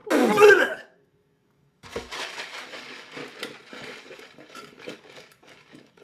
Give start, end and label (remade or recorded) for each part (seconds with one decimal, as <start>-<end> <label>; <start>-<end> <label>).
0.0-0.5 recorded; 0.5-3.2 remade; 3.2-3.7 recorded; 3.7-6.0 remade